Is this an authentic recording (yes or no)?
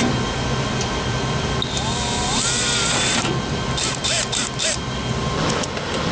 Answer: yes